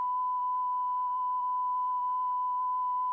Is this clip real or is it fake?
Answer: fake